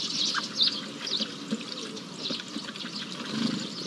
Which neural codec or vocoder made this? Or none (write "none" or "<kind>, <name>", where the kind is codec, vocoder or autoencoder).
none